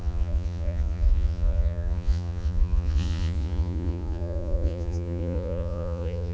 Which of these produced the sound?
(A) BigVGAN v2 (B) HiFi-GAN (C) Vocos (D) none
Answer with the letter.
C